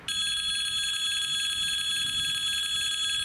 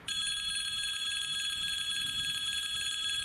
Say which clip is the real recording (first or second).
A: first